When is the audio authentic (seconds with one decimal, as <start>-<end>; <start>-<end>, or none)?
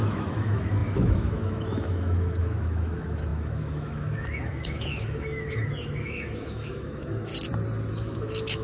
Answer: 7.3-7.9